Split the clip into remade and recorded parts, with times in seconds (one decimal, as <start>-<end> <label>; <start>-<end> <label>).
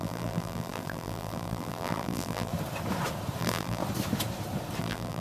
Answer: 0.0-2.5 remade; 2.5-3.4 recorded; 3.4-3.8 remade; 3.8-4.8 recorded; 4.8-5.2 remade